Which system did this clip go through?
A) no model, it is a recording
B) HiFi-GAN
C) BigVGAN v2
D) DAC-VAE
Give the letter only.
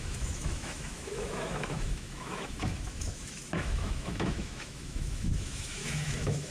D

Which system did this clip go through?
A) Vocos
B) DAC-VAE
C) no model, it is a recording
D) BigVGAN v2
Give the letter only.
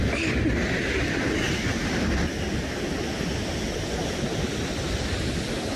C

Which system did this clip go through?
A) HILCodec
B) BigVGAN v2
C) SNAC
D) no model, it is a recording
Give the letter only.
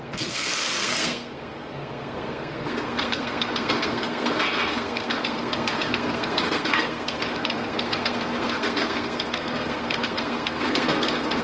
C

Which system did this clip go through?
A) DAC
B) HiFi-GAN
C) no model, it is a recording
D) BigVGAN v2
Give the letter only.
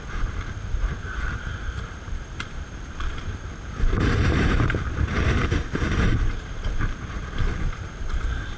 D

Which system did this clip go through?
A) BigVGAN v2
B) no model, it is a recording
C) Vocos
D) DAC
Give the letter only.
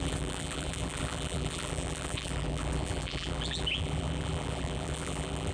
A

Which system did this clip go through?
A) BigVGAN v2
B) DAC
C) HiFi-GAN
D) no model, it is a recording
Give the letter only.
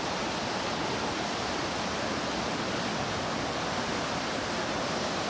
D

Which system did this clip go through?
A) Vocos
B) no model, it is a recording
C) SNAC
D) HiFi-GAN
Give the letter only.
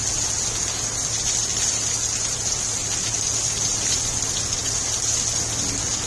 B